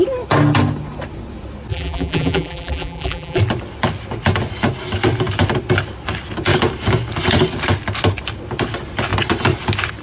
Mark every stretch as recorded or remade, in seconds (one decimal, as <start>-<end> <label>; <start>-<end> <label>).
0.0-1.7 recorded; 1.7-3.4 remade; 3.4-10.0 recorded